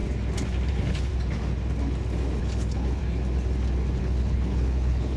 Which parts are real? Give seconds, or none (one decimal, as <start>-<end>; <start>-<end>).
0.0-0.7; 1.1-2.4; 3.0-4.0